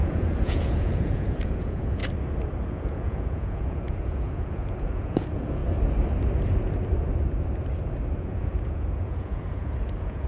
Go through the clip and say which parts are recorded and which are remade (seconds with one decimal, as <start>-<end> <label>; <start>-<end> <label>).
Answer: 0.0-2.0 remade; 2.0-2.6 recorded; 2.6-5.6 remade; 5.6-8.2 recorded; 8.2-10.3 remade